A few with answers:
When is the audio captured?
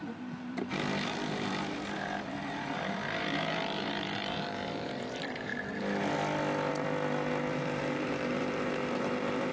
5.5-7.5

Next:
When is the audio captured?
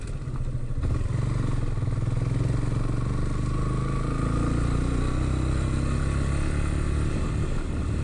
0.0-8.0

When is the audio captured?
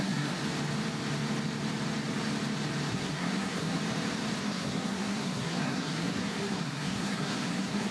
0.4-2.9; 3.8-4.4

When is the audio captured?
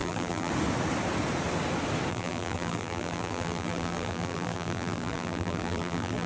0.5-2.1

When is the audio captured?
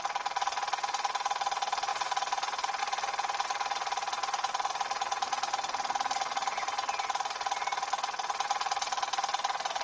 0.0-9.8